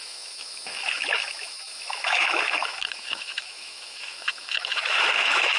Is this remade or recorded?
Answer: remade